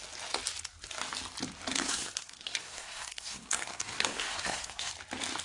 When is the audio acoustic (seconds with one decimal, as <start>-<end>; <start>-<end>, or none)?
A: 0.0-1.7; 4.9-5.4

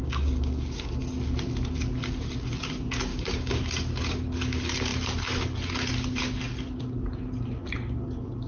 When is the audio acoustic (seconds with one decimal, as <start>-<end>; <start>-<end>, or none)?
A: 1.0-3.1; 3.6-8.5

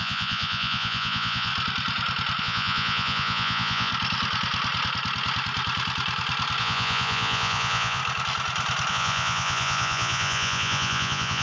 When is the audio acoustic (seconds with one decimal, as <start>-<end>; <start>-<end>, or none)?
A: 1.5-2.4; 3.9-6.6; 8.0-8.9

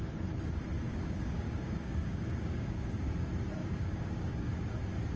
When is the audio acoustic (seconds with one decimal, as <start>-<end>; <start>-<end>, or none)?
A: 0.0-0.9; 3.1-3.6; 4.5-5.2

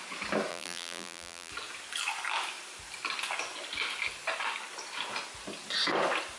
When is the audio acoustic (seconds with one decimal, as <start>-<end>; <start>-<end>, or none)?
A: 0.0-0.5; 1.5-6.4

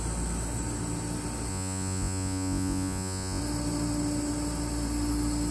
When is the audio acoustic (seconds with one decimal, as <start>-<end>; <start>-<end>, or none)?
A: 0.0-1.5; 3.4-5.5

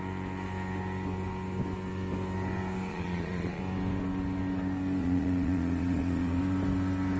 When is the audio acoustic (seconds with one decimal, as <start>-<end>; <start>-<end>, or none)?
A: 0.0-2.9; 3.6-5.0; 6.4-7.2

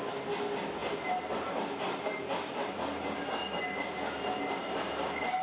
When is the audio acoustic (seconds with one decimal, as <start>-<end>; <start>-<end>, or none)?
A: 0.0-5.4